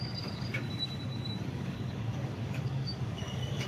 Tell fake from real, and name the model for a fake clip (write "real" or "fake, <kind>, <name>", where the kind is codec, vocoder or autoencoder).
fake, codec, DAC